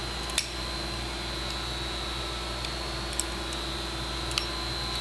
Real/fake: real